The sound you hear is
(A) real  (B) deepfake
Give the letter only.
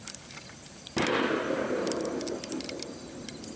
A